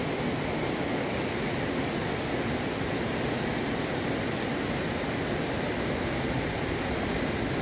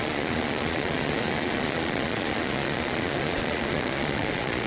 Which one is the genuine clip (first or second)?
first